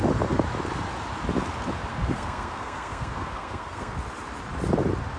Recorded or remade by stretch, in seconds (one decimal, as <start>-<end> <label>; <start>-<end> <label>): 0.0-1.9 recorded; 1.9-3.9 remade; 3.9-5.2 recorded